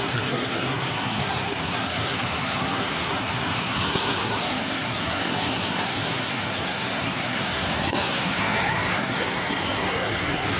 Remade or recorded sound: remade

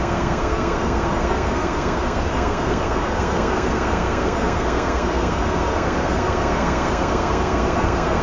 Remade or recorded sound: remade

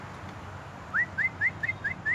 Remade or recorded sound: recorded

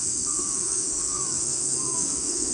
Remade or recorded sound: remade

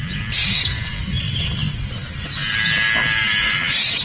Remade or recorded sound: recorded